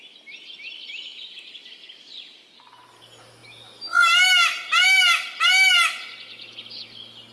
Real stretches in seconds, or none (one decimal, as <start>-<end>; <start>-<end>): 0.0-7.3